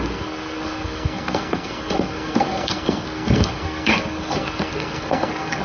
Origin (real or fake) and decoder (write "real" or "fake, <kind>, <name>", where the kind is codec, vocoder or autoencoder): fake, codec, SNAC